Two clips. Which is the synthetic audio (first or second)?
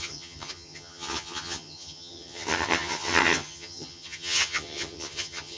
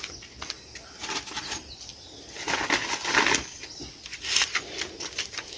first